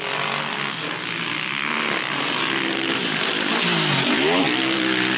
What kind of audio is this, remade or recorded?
recorded